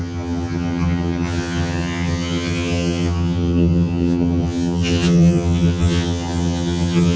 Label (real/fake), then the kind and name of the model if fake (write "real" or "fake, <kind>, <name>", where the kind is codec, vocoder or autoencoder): fake, vocoder, HiFi-GAN